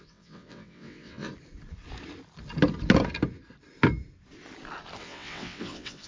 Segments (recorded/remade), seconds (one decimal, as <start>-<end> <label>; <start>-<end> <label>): 0.0-1.3 remade; 1.3-5.0 recorded; 5.0-6.1 remade